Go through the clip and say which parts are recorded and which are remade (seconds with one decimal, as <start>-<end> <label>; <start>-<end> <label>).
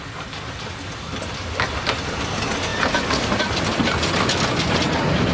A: 0.0-2.7 recorded; 2.7-4.1 remade; 4.1-5.3 recorded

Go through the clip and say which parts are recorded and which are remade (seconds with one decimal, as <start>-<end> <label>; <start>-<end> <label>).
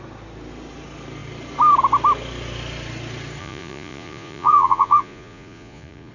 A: 0.0-3.4 recorded; 3.4-6.1 remade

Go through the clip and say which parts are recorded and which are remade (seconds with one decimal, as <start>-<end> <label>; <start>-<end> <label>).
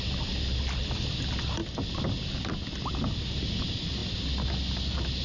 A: 0.0-5.2 recorded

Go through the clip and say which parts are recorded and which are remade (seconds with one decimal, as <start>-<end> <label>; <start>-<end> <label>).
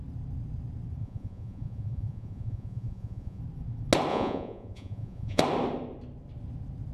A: 0.0-1.0 recorded; 1.0-3.4 remade; 3.4-4.1 recorded; 4.1-5.4 remade; 5.4-6.9 recorded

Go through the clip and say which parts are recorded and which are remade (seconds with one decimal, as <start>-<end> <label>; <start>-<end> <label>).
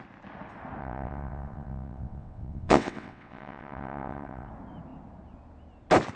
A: 0.0-0.8 recorded; 0.8-4.5 remade; 4.5-6.2 recorded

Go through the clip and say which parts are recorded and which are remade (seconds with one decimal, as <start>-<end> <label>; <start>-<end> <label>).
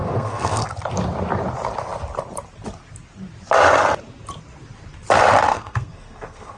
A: 0.0-0.7 remade; 0.7-5.5 recorded; 5.5-6.6 remade